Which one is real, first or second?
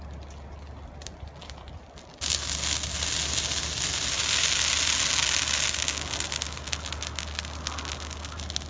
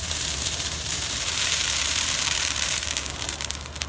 first